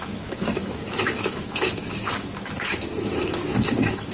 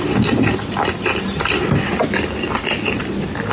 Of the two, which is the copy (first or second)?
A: first